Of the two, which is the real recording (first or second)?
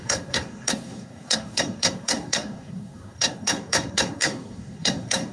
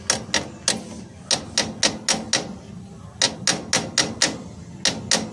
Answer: second